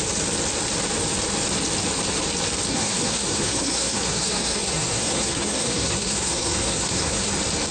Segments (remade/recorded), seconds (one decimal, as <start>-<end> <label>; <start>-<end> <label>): 0.0-2.7 recorded; 2.7-7.3 remade; 7.3-7.7 recorded